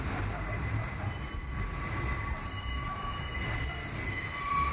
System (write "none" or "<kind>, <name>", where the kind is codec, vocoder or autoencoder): none